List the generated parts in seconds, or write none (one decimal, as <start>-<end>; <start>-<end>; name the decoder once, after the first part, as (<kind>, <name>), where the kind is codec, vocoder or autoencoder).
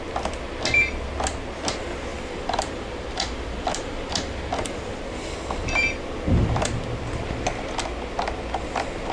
2.1-6.8 (vocoder, BigVGAN v2)